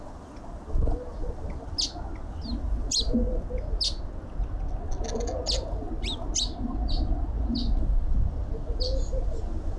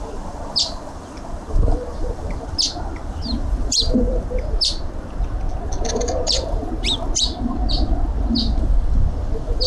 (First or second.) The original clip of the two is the first